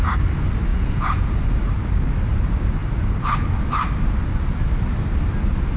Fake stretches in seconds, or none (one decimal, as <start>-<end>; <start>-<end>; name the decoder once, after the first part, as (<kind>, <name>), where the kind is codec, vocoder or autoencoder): 0.7-1.3 (vocoder, Vocos)